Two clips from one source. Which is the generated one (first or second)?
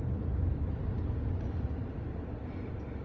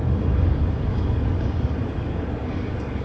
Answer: second